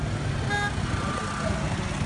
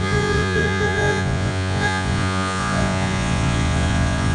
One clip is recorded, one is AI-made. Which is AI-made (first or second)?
second